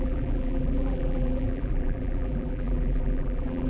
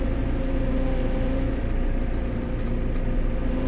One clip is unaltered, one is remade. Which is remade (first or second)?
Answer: first